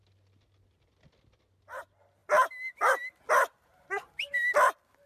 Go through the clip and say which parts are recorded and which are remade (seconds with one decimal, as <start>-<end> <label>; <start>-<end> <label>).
0.0-5.1 recorded